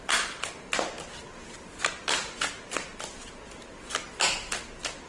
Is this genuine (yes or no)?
yes